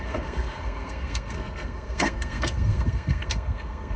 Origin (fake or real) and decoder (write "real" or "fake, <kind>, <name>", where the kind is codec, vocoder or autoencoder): fake, codec, SNAC